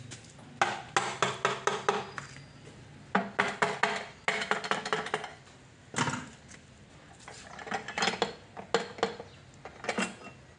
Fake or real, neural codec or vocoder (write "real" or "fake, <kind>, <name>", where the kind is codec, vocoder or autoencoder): real